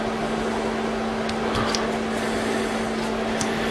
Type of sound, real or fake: real